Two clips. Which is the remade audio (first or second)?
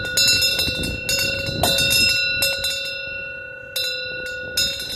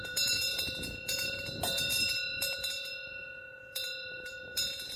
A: second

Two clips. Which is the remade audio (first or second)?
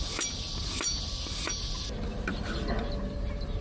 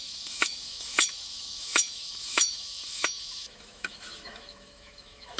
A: second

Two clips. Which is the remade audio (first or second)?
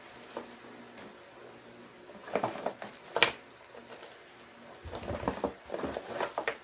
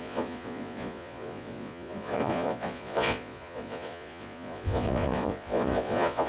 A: second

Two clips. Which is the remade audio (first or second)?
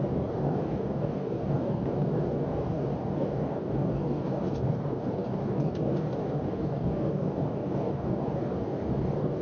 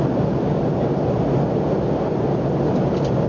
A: first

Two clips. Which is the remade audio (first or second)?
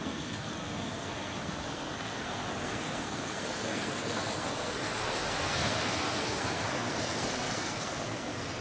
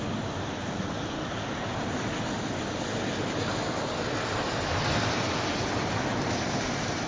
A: first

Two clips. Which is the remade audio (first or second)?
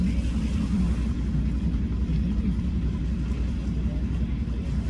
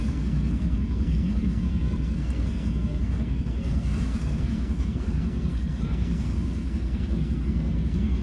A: second